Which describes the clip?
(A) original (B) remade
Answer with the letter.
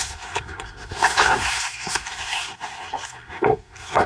B